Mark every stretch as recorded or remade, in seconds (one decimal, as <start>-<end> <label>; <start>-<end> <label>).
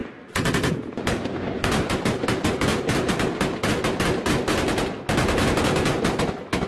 0.0-6.7 recorded